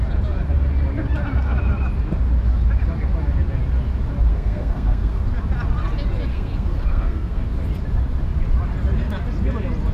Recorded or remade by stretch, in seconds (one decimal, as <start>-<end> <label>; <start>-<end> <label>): 0.0-4.3 recorded; 4.3-5.2 remade; 5.2-6.3 recorded; 6.3-7.4 remade; 7.4-9.9 recorded